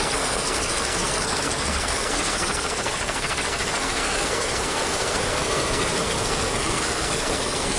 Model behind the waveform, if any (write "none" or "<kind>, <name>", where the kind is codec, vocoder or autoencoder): codec, SNAC